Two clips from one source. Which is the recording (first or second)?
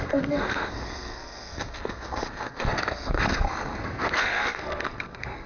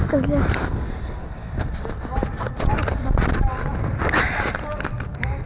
second